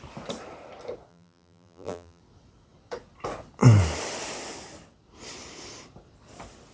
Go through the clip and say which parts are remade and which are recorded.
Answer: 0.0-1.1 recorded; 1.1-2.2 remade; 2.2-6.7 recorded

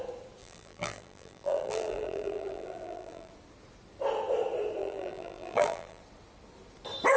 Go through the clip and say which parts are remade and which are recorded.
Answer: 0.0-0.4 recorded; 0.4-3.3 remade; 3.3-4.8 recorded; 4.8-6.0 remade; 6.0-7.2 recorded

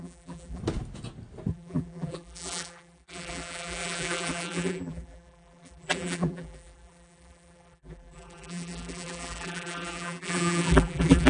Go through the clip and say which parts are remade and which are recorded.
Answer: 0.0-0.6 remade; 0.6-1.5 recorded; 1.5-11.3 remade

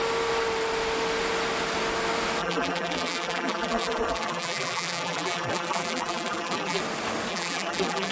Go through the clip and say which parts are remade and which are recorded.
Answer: 0.0-2.4 recorded; 2.4-6.8 remade; 6.8-7.3 recorded; 7.3-8.1 remade

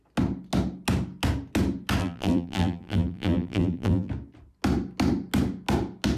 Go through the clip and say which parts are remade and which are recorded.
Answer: 0.0-2.0 recorded; 2.0-4.1 remade; 4.1-6.2 recorded

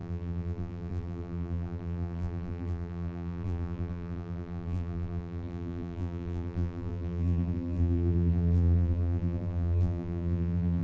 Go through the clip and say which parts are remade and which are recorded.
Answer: 0.0-10.8 remade

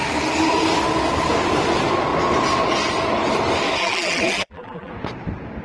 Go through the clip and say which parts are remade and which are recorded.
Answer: 0.0-3.8 recorded; 3.8-4.9 remade; 4.9-5.6 recorded